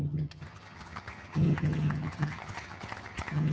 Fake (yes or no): yes